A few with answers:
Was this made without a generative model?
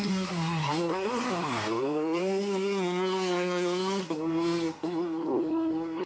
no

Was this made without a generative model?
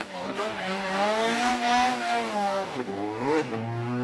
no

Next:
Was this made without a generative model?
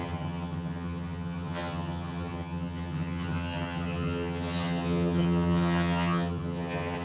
no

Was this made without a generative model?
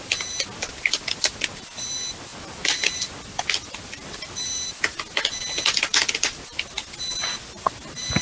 yes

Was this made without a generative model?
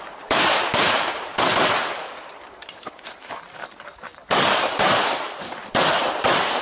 no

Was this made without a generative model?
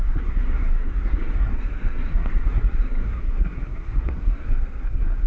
no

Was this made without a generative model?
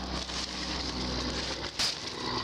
yes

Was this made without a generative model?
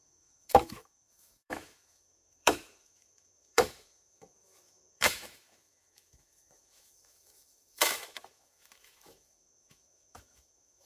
no